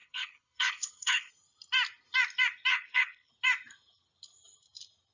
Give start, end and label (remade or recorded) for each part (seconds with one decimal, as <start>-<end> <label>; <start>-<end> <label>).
0.0-1.3 remade; 1.3-2.7 recorded; 2.7-3.3 remade; 3.3-5.1 recorded